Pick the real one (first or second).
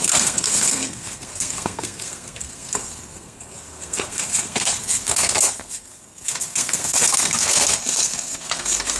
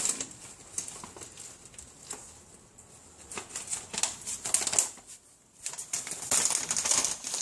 second